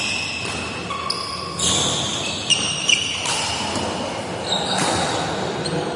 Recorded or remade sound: recorded